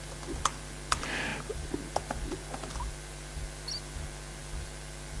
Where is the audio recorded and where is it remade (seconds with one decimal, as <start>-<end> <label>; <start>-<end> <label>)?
0.0-5.2 recorded